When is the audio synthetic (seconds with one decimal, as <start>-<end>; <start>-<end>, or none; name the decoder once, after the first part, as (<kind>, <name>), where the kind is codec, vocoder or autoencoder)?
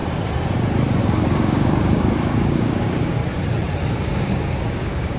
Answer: 1.0-3.2 (codec, DAC); 3.9-5.2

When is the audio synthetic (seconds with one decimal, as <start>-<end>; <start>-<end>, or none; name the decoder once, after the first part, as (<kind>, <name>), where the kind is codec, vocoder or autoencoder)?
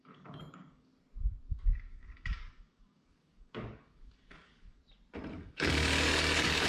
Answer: 0.0-0.9 (codec, DAC); 1.5-4.8; 5.3-6.7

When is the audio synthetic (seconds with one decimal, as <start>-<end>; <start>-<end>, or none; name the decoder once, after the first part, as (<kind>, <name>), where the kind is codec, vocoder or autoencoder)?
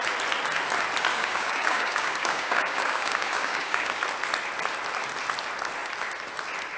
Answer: 1.1-4.0 (codec, DAC)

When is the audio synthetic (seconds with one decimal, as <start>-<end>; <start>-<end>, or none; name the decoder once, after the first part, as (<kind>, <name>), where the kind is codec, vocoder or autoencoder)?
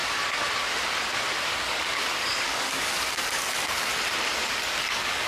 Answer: 1.5-3.9 (codec, DAC); 4.8-5.3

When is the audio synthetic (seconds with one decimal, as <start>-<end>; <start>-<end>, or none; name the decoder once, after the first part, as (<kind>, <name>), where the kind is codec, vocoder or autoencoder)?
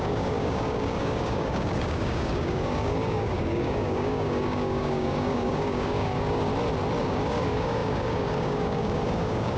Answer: 0.0-6.5 (codec, DAC); 7.0-9.6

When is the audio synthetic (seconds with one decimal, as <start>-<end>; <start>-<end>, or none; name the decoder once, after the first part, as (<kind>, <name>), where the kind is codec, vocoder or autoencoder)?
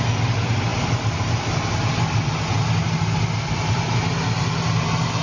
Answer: none